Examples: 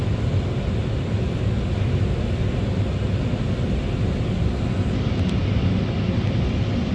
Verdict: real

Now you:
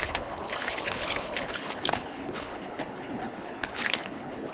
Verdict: fake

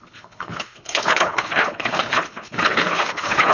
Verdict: fake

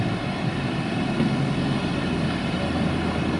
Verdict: real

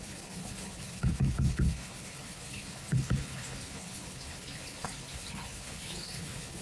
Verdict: fake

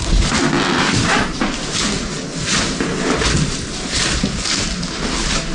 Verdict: real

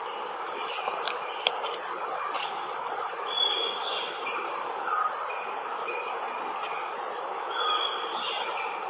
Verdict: real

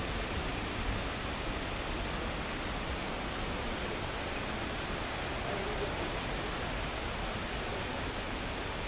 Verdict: real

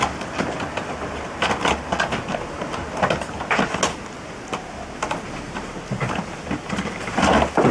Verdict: real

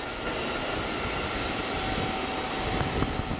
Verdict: real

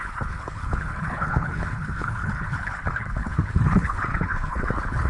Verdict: fake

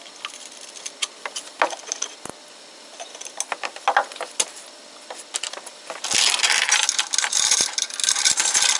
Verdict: real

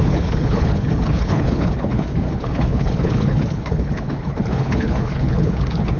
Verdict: fake